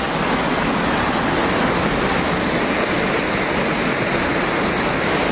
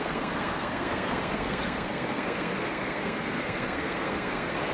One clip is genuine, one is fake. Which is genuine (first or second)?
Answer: first